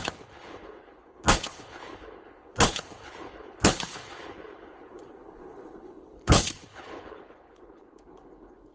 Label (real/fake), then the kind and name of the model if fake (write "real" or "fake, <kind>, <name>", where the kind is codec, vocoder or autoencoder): fake, codec, HILCodec